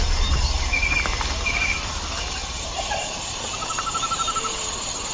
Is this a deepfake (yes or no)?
no